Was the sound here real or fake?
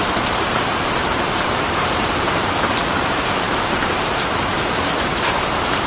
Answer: fake